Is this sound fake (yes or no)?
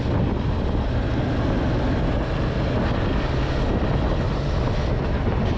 no